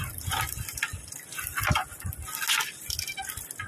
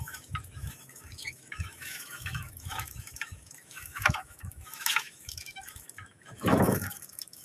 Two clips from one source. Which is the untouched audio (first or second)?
first